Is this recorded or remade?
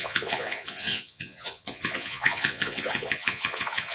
remade